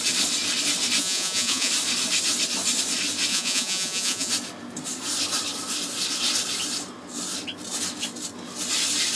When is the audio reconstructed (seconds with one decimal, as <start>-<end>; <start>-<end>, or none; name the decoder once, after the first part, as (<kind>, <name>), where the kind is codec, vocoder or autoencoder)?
1.0-1.7 (vocoder, Vocos); 3.3-4.3